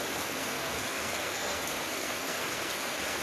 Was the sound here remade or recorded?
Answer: remade